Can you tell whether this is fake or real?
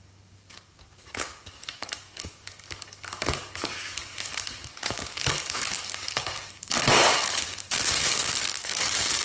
fake